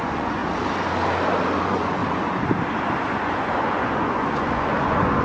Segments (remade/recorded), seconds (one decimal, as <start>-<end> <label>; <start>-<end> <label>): 0.0-0.4 remade; 0.4-1.6 recorded; 1.6-2.0 remade; 2.0-3.1 recorded; 3.1-5.2 remade